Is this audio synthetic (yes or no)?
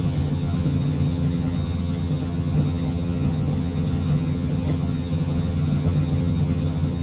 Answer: yes